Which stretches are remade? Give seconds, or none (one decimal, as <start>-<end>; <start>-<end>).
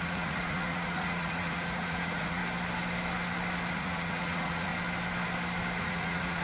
0.0-2.4; 3.7-4.7; 5.8-6.4